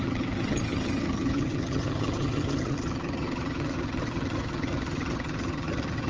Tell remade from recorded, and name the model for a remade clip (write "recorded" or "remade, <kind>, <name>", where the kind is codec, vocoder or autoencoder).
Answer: remade, vocoder, HiFi-GAN